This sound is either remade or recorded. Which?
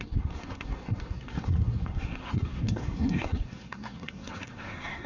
remade